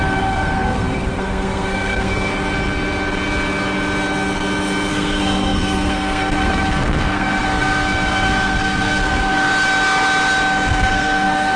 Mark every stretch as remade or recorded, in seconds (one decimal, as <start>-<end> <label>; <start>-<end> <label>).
0.0-2.3 remade; 2.3-4.9 recorded; 4.9-9.5 remade; 9.5-10.7 recorded; 10.7-11.6 remade